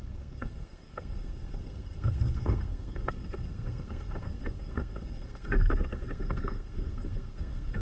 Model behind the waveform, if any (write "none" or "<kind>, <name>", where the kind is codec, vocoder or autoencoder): codec, SNAC